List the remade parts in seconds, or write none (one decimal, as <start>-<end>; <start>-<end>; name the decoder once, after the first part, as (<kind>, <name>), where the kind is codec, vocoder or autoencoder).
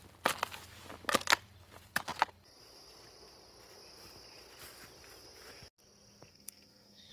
6.3-7.1 (codec, SNAC)